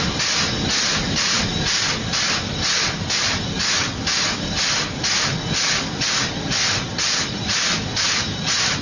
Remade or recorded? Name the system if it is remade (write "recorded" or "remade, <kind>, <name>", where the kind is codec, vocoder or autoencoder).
recorded